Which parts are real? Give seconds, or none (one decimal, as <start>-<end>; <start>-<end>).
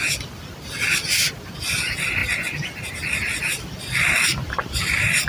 0.0-5.3